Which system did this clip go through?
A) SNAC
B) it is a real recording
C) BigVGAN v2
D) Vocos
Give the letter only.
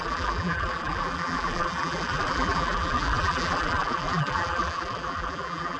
C